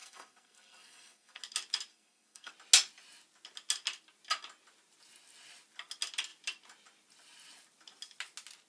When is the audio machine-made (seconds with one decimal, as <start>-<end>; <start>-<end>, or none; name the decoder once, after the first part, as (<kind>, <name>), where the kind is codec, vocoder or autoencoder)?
0.0-1.4 (codec, SNAC); 1.9-2.5